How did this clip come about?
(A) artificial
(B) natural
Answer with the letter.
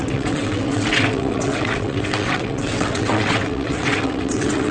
A